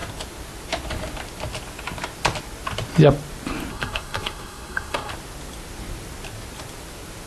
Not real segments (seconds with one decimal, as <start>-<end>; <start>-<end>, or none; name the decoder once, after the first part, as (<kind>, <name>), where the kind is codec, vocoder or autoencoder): 3.7-5.1 (codec, SNAC)